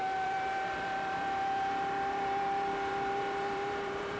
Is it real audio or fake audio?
fake